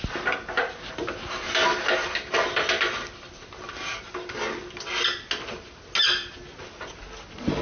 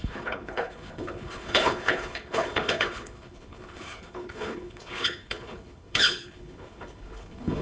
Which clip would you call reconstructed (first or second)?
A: second